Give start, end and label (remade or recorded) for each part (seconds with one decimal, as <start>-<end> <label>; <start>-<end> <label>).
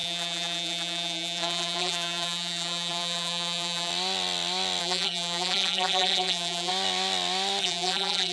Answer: 0.0-3.9 remade; 3.9-4.8 recorded; 4.8-6.7 remade; 6.7-7.6 recorded; 7.6-8.3 remade